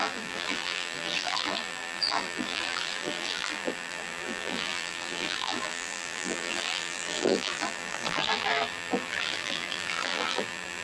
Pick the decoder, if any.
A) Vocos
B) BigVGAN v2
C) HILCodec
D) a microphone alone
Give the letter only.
B